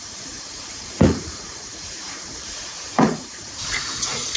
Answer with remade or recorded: remade